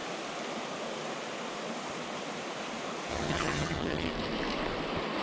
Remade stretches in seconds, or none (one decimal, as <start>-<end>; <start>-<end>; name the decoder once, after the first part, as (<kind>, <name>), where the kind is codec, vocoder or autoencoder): 3.1-4.1 (vocoder, HiFi-GAN)